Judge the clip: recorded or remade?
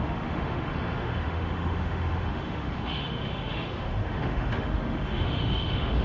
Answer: remade